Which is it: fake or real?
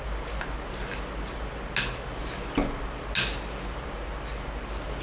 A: real